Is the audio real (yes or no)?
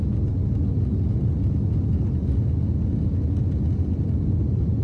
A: yes